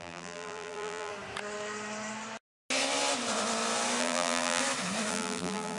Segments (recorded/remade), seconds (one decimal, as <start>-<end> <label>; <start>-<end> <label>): 0.0-1.1 remade; 1.1-4.0 recorded; 4.0-4.6 remade; 4.6-5.1 recorded; 5.1-5.8 remade